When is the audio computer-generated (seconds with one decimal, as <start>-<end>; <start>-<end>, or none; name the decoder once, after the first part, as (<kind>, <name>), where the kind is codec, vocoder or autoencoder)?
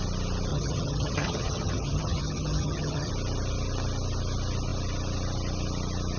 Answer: 0.5-3.1 (vocoder, HiFi-GAN)